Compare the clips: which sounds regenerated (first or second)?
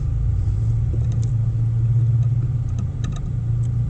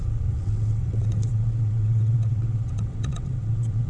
second